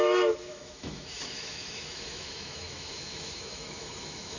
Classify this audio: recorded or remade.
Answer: remade